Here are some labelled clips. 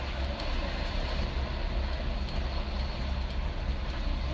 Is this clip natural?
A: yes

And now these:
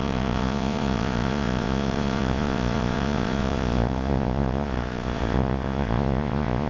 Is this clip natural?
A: no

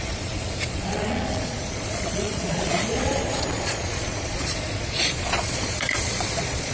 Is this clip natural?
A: no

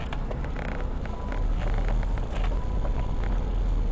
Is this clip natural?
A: yes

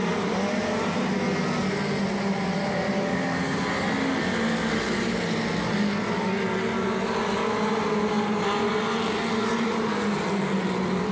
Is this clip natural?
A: yes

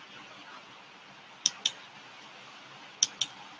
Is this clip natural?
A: yes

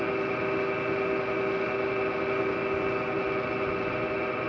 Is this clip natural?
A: yes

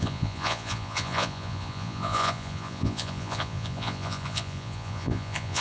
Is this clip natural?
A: no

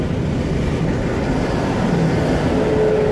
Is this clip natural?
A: yes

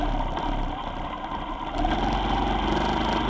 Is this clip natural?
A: yes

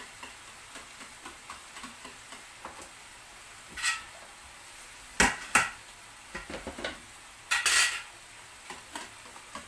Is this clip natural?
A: yes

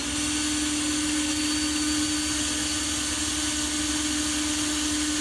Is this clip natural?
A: yes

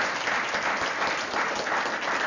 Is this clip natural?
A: yes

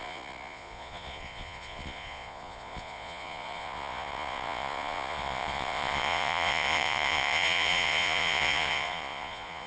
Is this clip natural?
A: no